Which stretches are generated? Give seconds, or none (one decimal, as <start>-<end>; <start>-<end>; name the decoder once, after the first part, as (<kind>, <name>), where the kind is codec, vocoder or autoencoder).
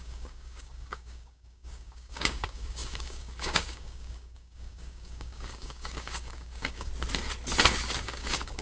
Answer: 0.0-6.9 (codec, DAC); 8.0-8.6